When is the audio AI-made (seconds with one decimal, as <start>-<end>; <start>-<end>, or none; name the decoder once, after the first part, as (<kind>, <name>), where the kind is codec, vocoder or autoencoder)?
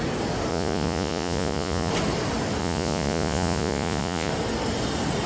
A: 0.5-1.9 (vocoder, Vocos); 2.6-4.3